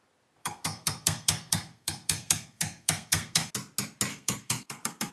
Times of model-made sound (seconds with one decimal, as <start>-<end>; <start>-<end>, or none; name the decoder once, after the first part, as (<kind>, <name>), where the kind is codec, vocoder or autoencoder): 0.4-3.5 (codec, SNAC); 4.1-5.1